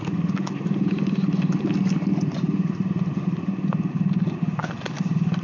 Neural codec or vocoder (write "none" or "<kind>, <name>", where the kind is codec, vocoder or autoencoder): none